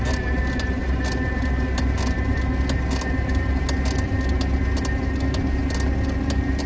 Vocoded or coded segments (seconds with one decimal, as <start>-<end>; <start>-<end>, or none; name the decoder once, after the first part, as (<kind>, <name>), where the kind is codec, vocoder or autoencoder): none

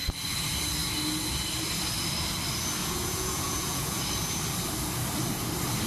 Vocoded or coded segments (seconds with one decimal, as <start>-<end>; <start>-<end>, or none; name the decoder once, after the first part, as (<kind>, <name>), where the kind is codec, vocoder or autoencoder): 2.8-4.0 (vocoder, Vocos)

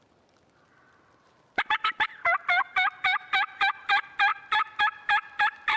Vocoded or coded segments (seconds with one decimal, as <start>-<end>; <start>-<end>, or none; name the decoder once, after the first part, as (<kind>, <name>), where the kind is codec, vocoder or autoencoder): none

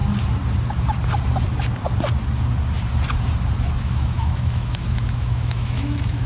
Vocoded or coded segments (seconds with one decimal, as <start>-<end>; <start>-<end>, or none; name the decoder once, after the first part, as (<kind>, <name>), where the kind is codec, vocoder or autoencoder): 3.8-6.3 (autoencoder, DAC-VAE)

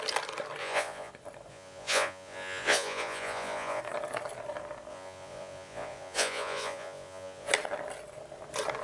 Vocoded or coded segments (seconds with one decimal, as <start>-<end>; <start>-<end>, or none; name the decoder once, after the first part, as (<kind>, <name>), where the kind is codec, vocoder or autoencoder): 0.6-1.1 (vocoder, Vocos); 1.5-3.8; 4.9-7.5

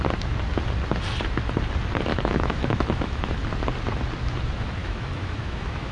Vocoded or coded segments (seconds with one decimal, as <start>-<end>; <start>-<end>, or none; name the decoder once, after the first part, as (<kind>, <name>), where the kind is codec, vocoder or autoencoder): 2.1-3.3 (autoencoder, DAC-VAE); 4.8-5.9